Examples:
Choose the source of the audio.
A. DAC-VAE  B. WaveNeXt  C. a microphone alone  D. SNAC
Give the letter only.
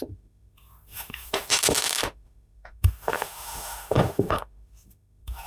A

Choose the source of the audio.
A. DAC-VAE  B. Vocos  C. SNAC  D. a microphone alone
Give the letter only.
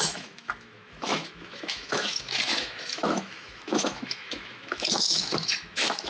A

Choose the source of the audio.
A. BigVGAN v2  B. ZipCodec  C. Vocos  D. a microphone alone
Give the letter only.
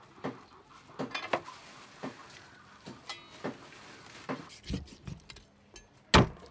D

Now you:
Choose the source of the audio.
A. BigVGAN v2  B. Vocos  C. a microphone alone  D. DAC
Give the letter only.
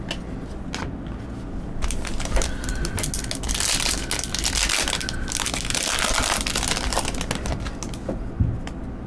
C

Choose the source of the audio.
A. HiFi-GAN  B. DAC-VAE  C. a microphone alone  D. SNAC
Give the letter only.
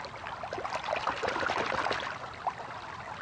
C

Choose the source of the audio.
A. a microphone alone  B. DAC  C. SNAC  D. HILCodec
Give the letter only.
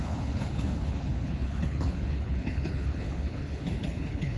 D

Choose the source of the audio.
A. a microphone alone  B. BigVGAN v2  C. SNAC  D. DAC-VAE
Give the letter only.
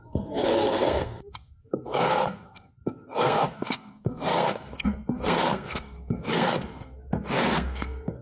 C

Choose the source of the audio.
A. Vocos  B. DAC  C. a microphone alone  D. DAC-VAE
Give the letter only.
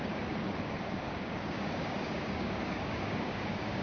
B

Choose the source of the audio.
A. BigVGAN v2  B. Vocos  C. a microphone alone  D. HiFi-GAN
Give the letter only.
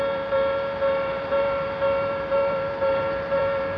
A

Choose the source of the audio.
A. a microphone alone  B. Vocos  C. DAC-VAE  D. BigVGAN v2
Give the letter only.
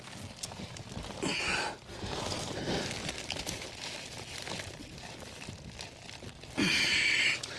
A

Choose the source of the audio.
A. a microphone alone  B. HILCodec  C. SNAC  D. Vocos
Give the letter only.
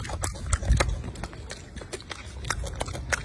A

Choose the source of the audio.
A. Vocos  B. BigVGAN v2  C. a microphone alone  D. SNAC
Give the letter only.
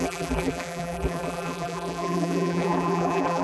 B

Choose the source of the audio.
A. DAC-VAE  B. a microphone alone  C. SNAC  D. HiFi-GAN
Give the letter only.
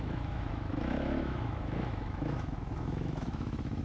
A